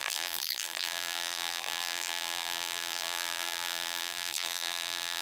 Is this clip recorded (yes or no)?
no